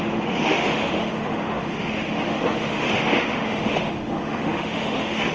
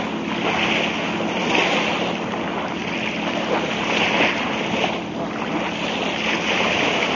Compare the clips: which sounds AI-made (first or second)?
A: first